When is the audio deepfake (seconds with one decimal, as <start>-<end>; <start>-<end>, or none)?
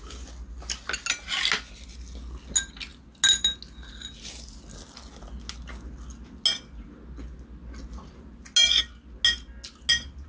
none